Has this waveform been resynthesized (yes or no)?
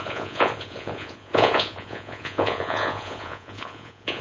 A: yes